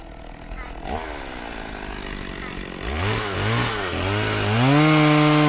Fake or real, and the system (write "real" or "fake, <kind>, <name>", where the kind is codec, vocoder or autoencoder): real